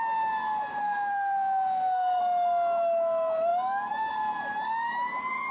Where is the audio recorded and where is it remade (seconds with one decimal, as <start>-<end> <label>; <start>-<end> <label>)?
0.0-0.8 recorded; 0.8-2.2 remade; 2.2-5.5 recorded